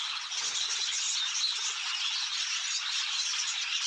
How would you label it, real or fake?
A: real